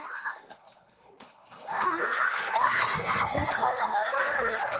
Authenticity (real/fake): fake